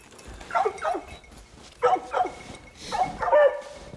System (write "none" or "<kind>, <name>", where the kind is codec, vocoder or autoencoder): none